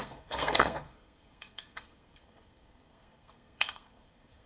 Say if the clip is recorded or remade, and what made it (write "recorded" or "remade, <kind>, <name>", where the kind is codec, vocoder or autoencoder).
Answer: remade, codec, SNAC